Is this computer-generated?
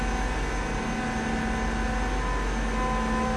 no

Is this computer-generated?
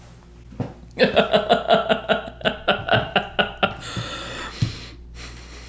no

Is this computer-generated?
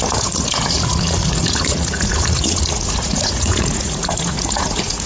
yes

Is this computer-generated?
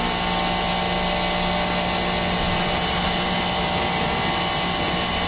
no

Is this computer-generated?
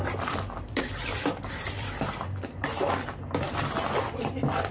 yes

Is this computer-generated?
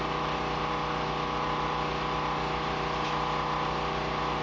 no